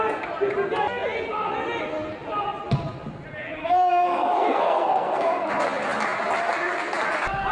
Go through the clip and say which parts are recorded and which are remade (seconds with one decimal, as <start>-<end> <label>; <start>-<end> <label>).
0.0-3.6 recorded; 3.6-5.5 remade; 5.5-7.5 recorded